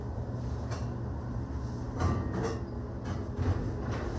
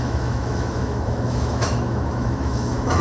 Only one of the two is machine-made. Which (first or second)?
second